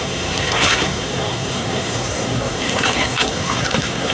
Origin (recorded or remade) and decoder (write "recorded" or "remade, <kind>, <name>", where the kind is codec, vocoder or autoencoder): remade, codec, SNAC